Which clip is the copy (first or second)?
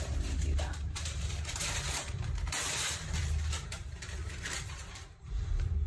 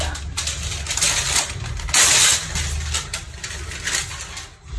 first